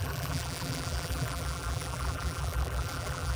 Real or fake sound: fake